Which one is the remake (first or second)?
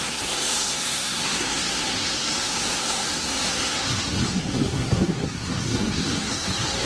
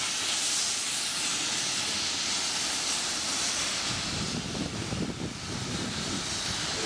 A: first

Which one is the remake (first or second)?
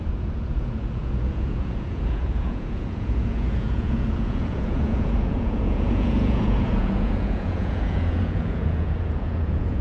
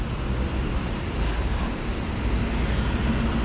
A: first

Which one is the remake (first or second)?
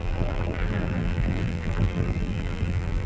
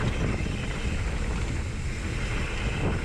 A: first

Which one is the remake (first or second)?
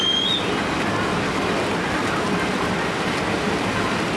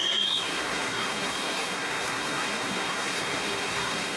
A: second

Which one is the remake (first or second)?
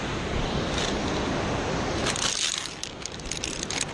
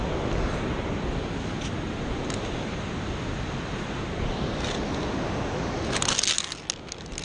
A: first